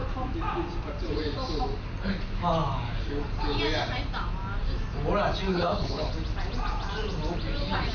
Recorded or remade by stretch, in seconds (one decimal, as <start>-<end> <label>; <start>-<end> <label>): 0.0-5.5 recorded; 5.5-6.1 remade; 6.1-7.9 recorded